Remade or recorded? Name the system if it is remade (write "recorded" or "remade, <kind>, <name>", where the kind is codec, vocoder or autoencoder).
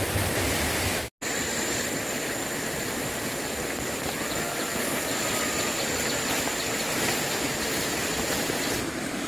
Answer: recorded